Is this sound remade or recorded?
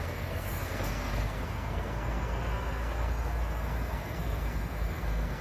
remade